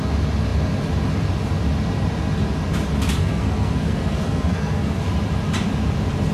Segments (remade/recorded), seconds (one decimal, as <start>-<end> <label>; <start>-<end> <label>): 0.0-3.2 recorded; 3.2-5.0 remade; 5.0-6.3 recorded